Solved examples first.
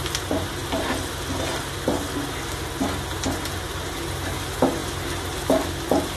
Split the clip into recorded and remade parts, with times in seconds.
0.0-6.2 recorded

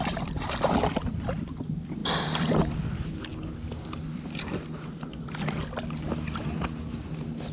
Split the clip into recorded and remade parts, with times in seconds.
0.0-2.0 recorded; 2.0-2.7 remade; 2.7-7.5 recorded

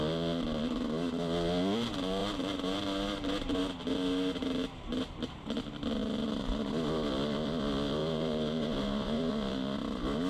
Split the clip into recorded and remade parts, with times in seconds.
0.0-2.2 recorded; 2.2-5.6 remade; 5.6-6.0 recorded; 6.0-6.7 remade; 6.7-8.0 recorded; 8.0-9.3 remade; 9.3-10.3 recorded